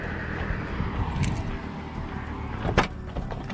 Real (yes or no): yes